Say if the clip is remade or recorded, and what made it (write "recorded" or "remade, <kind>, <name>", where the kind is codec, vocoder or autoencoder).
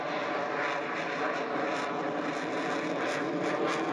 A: recorded